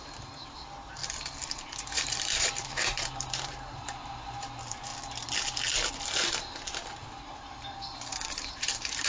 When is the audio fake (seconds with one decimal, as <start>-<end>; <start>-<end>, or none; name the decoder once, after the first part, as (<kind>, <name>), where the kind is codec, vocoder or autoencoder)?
0.0-4.9 (vocoder, BigVGAN v2); 5.9-9.1